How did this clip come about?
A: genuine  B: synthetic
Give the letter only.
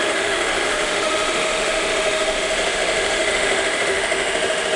B